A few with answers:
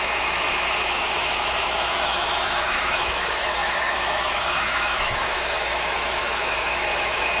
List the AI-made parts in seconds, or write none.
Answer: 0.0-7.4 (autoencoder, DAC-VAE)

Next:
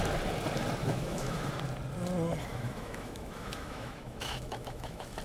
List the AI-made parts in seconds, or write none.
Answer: 0.8-1.5 (autoencoder, DAC-VAE); 2.5-5.2

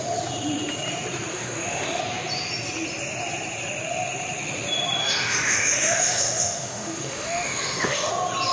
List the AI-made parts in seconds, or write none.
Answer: 1.3-2.0 (autoencoder, DAC-VAE); 5.0-8.1